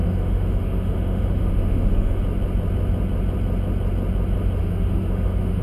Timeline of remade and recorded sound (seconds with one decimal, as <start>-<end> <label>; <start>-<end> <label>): 0.0-2.2 remade; 2.2-4.6 recorded; 4.6-5.6 remade